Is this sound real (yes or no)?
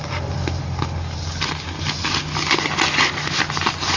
yes